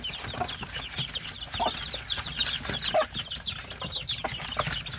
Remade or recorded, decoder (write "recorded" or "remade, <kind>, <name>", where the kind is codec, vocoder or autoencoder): recorded